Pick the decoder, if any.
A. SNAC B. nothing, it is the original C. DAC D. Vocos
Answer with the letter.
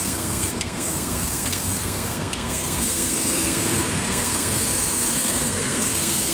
A